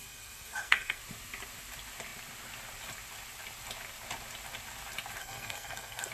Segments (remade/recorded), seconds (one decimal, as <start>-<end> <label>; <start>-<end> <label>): 0.0-1.0 remade; 1.0-5.2 recorded; 5.2-6.1 remade